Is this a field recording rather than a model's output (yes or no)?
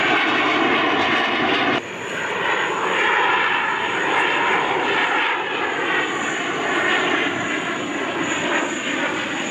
yes